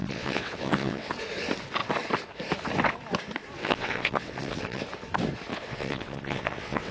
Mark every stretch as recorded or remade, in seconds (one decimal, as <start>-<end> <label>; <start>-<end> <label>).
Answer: 0.0-1.1 remade; 1.1-3.6 recorded; 3.6-4.8 remade; 4.8-5.5 recorded; 5.5-6.9 remade